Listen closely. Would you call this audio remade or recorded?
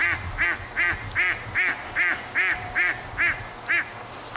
recorded